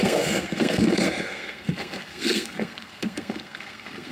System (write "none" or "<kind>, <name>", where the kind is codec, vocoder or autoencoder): codec, SNAC